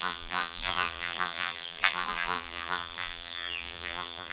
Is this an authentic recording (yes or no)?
no